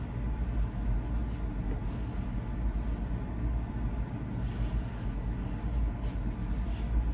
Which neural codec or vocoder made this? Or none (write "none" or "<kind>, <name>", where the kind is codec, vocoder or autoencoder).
none